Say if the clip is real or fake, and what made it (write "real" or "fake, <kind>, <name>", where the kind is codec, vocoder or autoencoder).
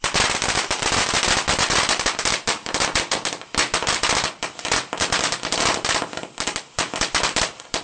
real